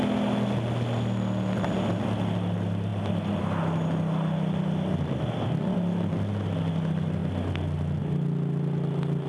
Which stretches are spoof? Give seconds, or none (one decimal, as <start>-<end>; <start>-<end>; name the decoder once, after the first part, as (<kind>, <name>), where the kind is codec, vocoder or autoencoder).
none